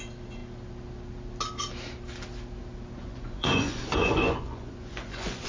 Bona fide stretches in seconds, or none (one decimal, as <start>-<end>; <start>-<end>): 0.0-3.0